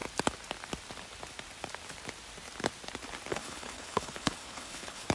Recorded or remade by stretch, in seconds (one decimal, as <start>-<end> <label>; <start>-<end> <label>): 0.0-3.3 recorded; 3.3-5.1 remade